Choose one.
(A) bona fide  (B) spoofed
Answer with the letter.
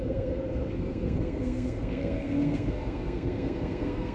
B